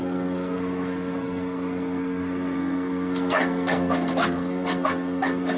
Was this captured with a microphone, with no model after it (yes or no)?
no